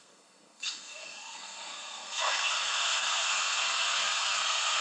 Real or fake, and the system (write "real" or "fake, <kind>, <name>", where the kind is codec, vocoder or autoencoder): fake, codec, SNAC